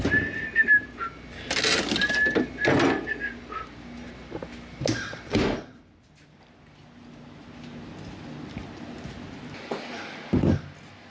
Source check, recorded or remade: recorded